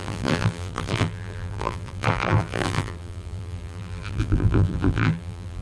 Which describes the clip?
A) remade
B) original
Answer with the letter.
A